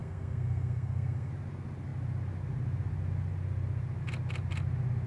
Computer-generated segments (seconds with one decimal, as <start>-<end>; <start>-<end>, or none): 0.0-1.3